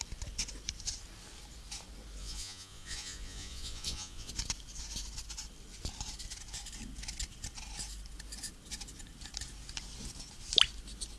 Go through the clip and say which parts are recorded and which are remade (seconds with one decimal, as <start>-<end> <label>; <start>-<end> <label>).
0.0-2.2 recorded; 2.2-4.3 remade; 4.3-11.2 recorded